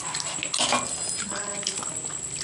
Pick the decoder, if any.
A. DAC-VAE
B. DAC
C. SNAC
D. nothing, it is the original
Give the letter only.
D